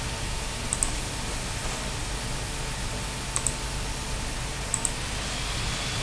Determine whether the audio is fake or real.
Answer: real